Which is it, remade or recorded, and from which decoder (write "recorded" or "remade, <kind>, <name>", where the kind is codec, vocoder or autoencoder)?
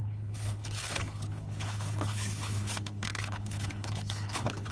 remade, codec, HILCodec